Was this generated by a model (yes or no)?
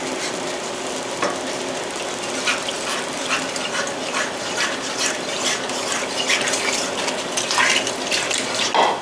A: no